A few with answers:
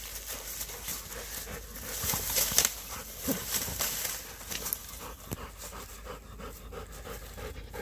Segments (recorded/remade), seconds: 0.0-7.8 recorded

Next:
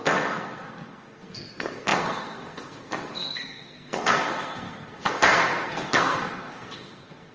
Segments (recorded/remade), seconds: 0.0-7.3 remade

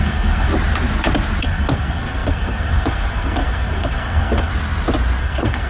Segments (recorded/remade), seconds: 0.0-0.5 remade; 0.5-1.4 recorded; 1.4-4.5 remade; 4.5-5.2 recorded; 5.2-5.7 remade

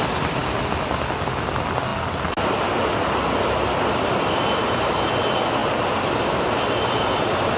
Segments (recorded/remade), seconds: 0.0-7.6 recorded